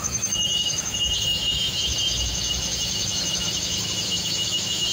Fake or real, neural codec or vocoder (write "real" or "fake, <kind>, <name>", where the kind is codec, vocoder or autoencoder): fake, autoencoder, DAC-VAE